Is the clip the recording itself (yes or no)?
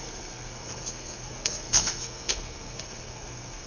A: no